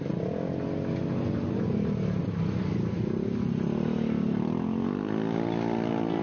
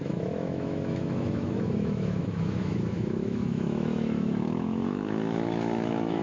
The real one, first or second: first